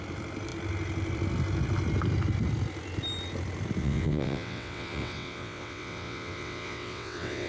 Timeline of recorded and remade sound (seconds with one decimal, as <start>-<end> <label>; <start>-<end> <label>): 0.0-3.8 recorded; 3.8-7.5 remade